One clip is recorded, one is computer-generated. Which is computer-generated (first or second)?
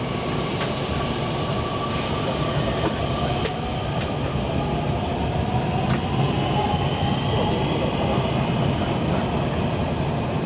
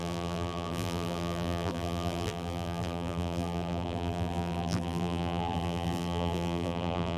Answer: second